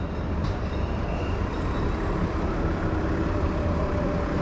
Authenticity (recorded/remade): remade